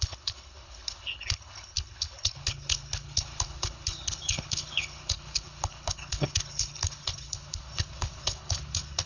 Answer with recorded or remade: remade